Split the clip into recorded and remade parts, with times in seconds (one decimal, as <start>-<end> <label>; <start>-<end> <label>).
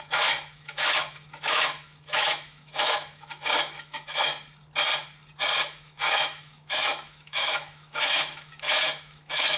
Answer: 0.0-4.3 remade; 4.3-5.6 recorded; 5.6-9.6 remade